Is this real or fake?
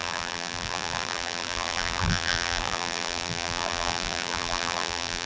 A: fake